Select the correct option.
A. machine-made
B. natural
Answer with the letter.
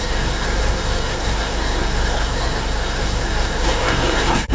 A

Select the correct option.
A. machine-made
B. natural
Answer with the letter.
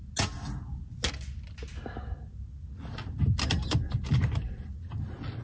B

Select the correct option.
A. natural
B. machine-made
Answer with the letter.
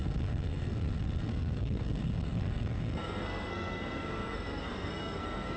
B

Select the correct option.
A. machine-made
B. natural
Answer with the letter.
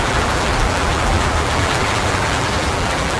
A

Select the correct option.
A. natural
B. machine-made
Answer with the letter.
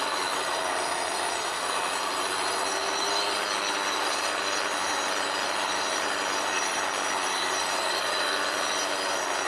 A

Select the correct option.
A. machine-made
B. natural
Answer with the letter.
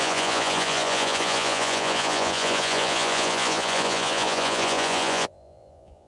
A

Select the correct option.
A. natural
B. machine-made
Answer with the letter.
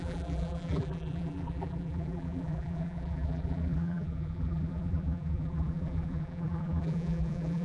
B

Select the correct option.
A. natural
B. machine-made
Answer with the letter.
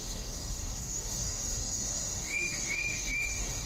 B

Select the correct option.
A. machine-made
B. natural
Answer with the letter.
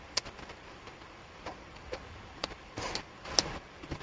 B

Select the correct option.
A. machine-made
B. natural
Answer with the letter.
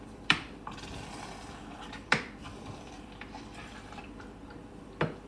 A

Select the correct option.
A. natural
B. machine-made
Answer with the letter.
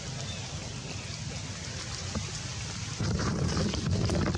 A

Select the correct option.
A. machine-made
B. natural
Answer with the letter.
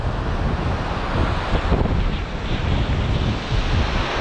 B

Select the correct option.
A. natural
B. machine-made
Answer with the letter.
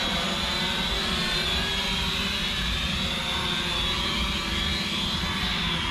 A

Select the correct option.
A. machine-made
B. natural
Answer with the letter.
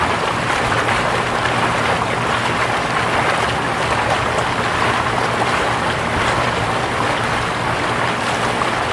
B